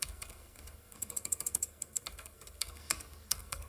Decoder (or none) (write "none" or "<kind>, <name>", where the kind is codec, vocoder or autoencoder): codec, SNAC